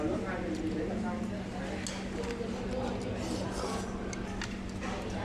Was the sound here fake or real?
real